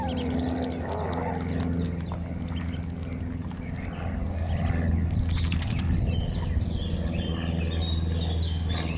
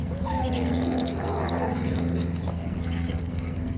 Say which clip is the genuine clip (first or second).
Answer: first